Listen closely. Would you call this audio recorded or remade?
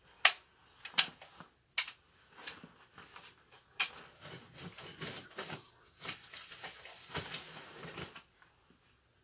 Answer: recorded